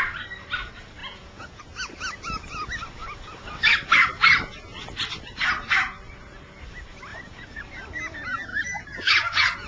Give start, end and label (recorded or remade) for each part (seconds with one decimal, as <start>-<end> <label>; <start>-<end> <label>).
0.0-1.0 recorded; 1.0-1.6 remade; 1.6-7.1 recorded; 7.1-7.6 remade; 7.6-8.5 recorded; 8.5-9.7 remade

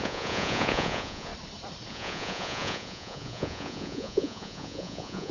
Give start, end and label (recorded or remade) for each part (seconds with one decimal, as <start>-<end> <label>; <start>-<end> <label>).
0.0-1.3 remade; 1.3-1.9 recorded; 1.9-5.3 remade

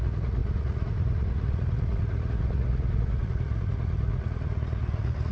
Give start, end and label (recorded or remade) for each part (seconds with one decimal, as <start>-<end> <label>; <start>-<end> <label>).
0.0-5.3 remade

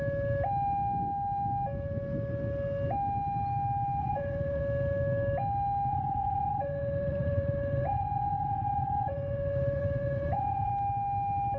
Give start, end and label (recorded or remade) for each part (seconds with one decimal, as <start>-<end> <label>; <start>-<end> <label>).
0.0-4.0 recorded; 4.0-4.6 remade; 4.6-5.9 recorded; 5.9-10.7 remade; 10.7-11.6 recorded